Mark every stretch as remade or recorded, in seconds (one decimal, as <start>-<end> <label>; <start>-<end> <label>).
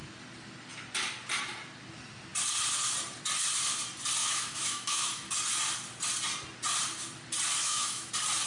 0.0-4.2 recorded; 4.2-5.3 remade; 5.3-7.6 recorded; 7.6-8.1 remade; 8.1-8.5 recorded